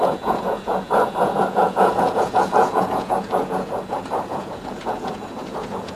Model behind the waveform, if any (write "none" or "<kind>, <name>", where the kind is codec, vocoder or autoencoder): vocoder, Vocos